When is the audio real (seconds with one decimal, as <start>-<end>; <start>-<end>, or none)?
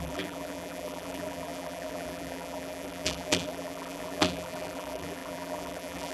none